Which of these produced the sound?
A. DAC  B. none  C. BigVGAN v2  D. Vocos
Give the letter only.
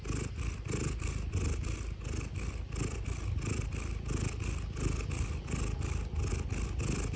B